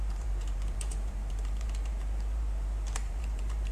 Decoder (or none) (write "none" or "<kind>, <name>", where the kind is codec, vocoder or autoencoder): vocoder, BigVGAN v2